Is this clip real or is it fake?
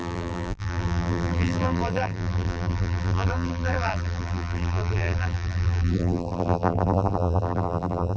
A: fake